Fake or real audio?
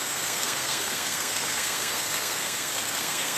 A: fake